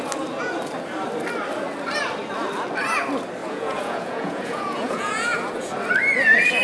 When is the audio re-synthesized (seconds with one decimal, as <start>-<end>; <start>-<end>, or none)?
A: 3.4-5.7